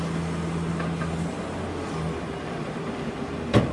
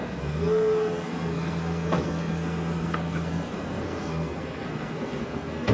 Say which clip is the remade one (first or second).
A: second